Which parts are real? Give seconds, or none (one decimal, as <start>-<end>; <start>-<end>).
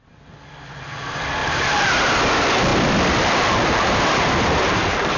0.0-1.4; 1.9-2.7